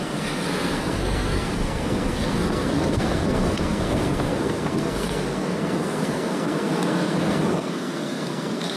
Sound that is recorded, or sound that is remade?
remade